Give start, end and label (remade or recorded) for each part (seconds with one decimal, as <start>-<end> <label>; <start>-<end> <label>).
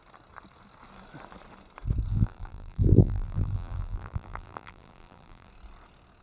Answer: 0.0-2.1 recorded; 2.1-5.5 remade; 5.5-6.2 recorded